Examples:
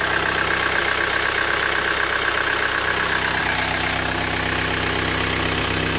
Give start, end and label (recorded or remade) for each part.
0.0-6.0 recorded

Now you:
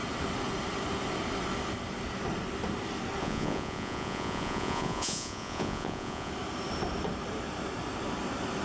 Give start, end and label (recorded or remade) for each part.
0.0-3.2 recorded; 3.2-6.3 remade; 6.3-8.6 recorded